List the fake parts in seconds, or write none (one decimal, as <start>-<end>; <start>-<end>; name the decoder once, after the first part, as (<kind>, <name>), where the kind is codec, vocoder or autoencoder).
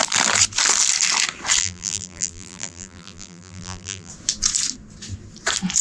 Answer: 1.6-4.1 (vocoder, BigVGAN v2)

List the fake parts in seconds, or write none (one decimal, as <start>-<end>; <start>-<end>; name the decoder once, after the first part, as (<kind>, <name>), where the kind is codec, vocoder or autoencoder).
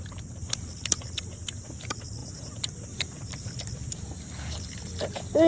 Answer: 2.2-3.5 (vocoder, BigVGAN v2)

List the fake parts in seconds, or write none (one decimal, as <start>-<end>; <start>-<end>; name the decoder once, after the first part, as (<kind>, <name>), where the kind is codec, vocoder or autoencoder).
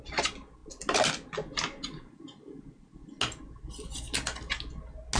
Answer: none